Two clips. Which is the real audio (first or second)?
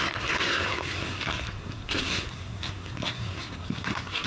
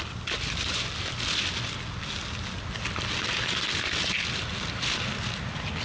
second